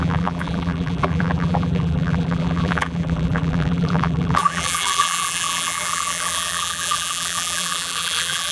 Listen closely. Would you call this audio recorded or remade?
remade